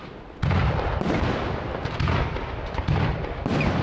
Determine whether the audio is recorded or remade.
recorded